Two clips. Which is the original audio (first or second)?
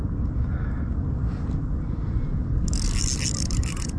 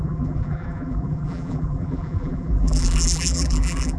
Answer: first